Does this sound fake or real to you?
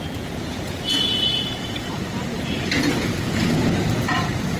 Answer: fake